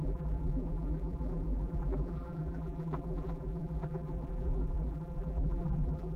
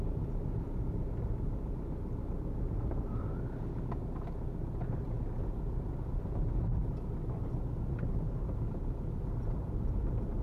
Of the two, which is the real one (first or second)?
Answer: second